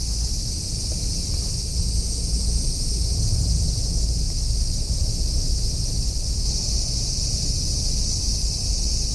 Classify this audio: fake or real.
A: real